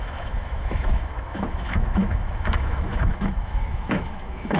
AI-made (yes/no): yes